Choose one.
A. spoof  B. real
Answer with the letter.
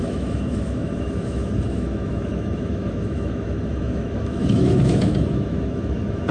A